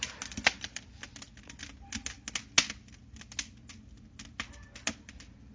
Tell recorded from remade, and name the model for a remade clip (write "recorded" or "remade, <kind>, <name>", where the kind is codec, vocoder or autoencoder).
recorded